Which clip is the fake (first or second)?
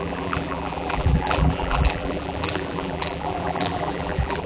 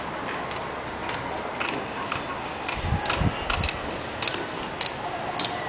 first